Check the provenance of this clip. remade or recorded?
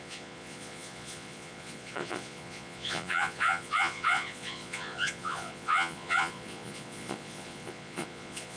remade